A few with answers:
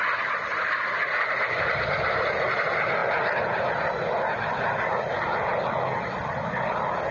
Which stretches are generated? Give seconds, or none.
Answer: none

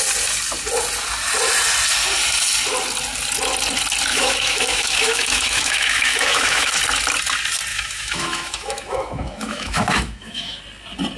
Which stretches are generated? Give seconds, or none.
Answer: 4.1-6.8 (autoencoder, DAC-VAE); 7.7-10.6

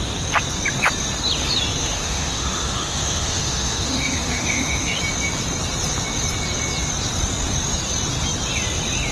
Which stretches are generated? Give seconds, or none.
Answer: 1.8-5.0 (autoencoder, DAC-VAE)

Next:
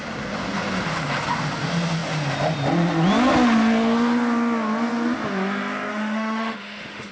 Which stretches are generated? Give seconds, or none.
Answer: 5.9-7.1 (autoencoder, DAC-VAE)

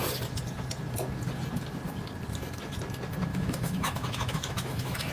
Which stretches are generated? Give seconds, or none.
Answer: 3.3-5.1 (autoencoder, DAC-VAE)

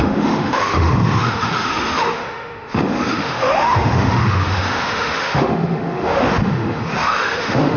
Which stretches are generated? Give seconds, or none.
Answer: 0.0-7.8 (autoencoder, DAC-VAE)

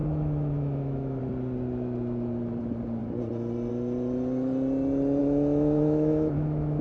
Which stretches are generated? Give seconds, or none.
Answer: 0.0-1.2 (autoencoder, DAC-VAE); 5.2-6.8

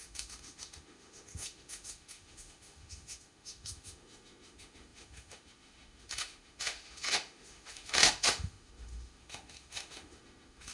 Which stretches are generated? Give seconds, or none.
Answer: 0.0-10.7 (autoencoder, DAC-VAE)